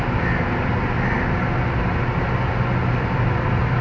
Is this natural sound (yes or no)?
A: yes